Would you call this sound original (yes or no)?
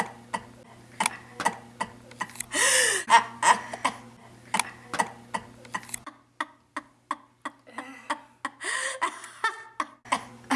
yes